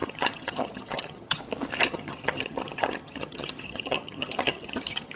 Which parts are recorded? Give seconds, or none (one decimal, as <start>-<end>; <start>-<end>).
1.4-1.9